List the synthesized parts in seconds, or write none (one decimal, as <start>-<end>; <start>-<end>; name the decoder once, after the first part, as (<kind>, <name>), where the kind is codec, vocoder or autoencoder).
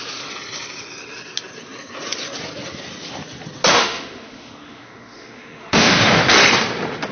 3.7-6.2 (autoencoder, DAC-VAE)